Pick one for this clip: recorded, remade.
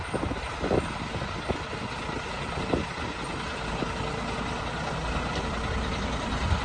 recorded